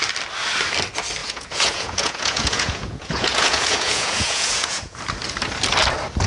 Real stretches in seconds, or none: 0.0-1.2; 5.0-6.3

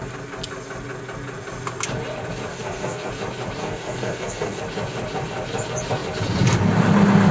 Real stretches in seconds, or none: 0.0-2.5; 3.1-3.6; 4.6-7.3

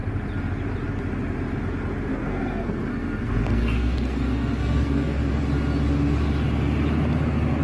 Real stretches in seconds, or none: 0.0-2.1; 5.4-7.6

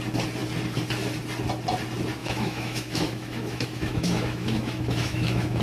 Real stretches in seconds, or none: 0.0-2.2

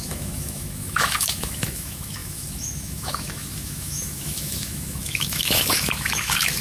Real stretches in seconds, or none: none